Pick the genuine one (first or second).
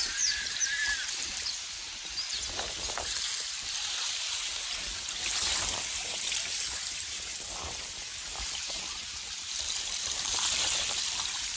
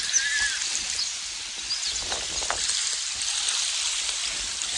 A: second